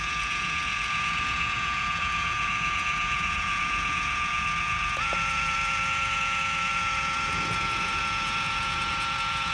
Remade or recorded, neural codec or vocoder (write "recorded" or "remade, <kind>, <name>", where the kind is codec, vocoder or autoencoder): remade, vocoder, Vocos